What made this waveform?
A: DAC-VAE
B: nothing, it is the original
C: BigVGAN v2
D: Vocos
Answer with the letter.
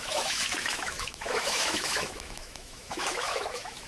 A